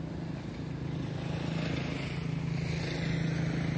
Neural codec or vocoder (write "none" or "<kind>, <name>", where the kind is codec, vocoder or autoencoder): none